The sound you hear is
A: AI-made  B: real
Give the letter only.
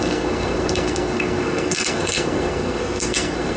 A